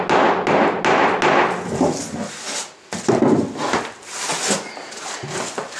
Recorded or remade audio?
recorded